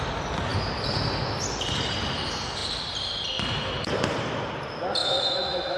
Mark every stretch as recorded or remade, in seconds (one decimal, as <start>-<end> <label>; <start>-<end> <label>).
0.0-5.0 recorded; 5.0-5.8 remade